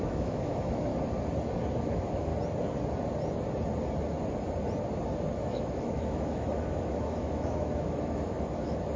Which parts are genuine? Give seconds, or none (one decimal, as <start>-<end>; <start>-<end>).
0.9-1.8; 2.3-5.4